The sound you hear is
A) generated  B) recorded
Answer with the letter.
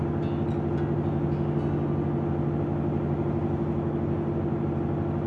B